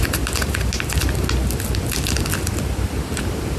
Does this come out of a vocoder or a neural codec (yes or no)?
no